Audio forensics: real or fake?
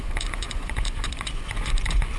fake